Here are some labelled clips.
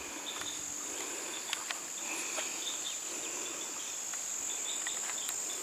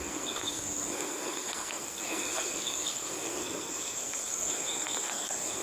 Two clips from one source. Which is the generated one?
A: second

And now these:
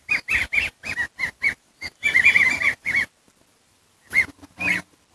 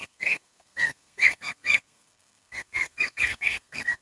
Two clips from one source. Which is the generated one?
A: second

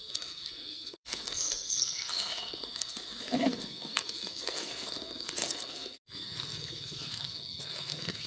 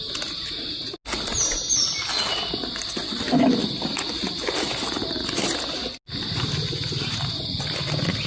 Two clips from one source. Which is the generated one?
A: first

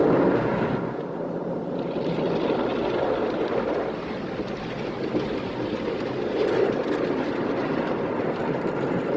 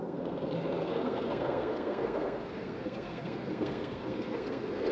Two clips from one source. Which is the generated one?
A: second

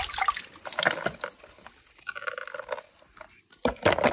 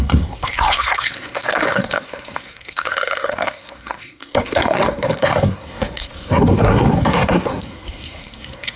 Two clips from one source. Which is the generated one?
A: second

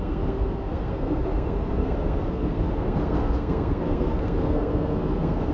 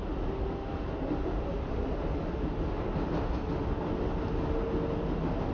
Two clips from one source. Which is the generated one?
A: first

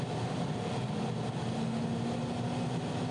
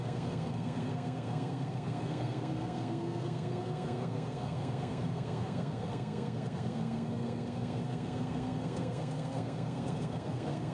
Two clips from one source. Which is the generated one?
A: second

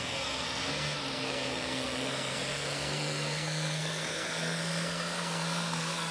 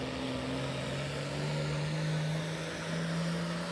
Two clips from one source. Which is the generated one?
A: first